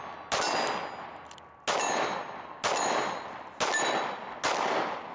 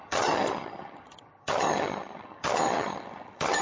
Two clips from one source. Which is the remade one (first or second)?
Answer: second